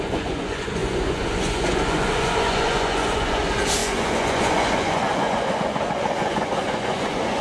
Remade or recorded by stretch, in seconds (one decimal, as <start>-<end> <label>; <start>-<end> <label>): 0.0-7.4 remade

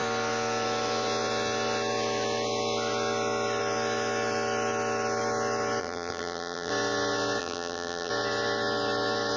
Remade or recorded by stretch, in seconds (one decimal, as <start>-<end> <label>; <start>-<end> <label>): 0.0-5.8 recorded; 5.8-6.7 remade; 6.7-7.4 recorded; 7.4-8.1 remade; 8.1-9.4 recorded

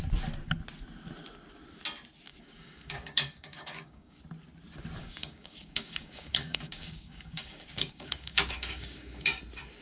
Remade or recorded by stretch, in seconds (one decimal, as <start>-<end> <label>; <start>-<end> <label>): 0.0-2.3 recorded; 2.3-4.2 remade; 4.2-5.0 recorded; 5.0-9.4 remade; 9.4-9.8 recorded

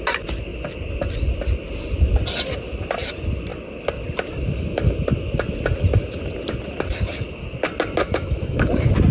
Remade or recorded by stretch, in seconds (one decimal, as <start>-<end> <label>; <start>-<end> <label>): 0.0-8.0 recorded; 8.0-8.7 remade; 8.7-9.1 recorded

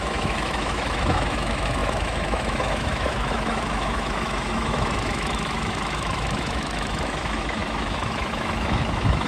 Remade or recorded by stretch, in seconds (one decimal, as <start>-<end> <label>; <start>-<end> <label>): 0.0-9.3 remade

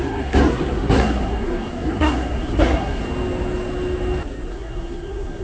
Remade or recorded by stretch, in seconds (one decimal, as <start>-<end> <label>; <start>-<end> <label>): 0.0-3.0 remade; 3.0-4.5 recorded; 4.5-5.4 remade

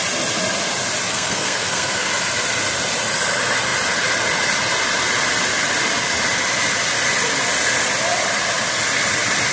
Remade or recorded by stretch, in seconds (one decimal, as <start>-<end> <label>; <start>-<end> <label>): 0.0-1.1 recorded; 1.1-2.1 remade; 2.1-9.5 recorded

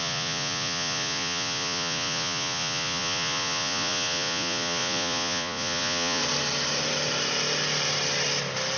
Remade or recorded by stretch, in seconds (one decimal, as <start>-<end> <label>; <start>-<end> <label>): 0.0-6.2 remade; 6.2-8.8 recorded